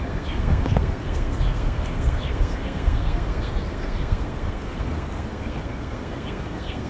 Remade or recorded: remade